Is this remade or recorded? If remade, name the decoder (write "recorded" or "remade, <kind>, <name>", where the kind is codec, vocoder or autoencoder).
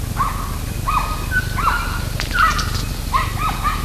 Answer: recorded